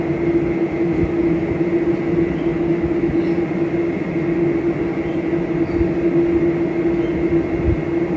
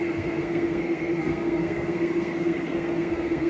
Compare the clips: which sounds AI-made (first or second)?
second